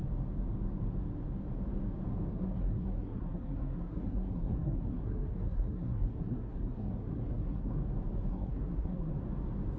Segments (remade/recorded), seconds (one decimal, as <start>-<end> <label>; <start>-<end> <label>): 0.0-2.3 recorded; 2.3-7.8 remade; 7.8-8.3 recorded; 8.3-9.1 remade; 9.1-9.8 recorded